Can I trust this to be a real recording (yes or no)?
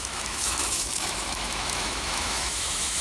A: no